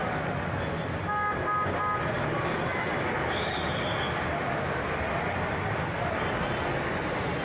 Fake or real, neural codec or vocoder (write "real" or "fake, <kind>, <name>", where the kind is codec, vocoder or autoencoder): real